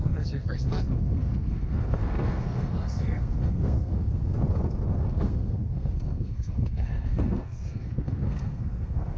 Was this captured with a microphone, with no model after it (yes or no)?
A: no